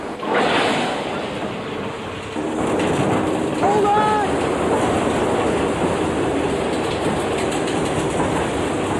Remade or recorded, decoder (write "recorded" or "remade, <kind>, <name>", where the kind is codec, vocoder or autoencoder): remade, vocoder, BigVGAN v2